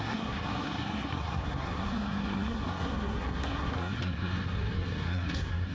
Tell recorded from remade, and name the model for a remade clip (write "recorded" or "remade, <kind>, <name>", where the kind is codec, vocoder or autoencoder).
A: remade, codec, SNAC